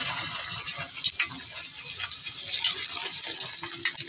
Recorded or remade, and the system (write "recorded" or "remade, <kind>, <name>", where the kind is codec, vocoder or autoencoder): recorded